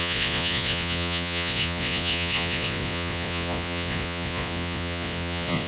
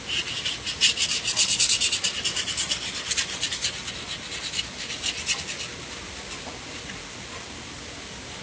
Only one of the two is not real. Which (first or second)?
first